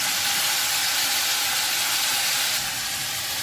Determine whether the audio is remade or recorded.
recorded